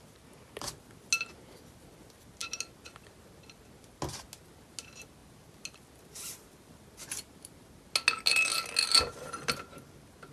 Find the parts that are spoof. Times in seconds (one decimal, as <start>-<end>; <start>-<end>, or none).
none